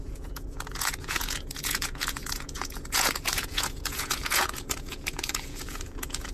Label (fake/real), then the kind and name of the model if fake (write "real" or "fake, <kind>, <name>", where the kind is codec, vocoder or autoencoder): fake, vocoder, Vocos